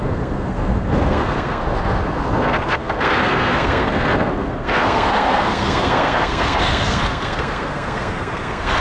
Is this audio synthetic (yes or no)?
yes